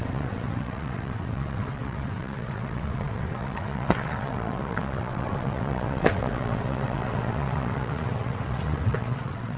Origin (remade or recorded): remade